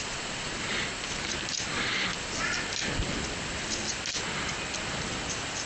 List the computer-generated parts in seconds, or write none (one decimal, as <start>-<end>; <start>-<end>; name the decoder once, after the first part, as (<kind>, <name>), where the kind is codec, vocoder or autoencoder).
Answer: 0.0-0.8 (vocoder, Vocos); 1.7-2.1